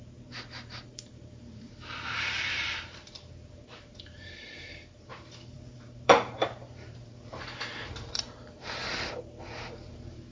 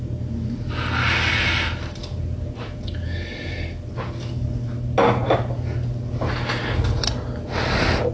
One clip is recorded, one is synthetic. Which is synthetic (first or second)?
first